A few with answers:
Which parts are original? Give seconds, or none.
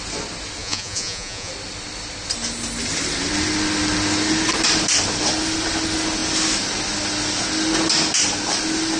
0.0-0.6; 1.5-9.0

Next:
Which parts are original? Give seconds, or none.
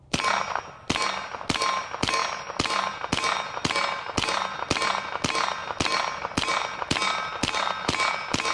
0.0-8.5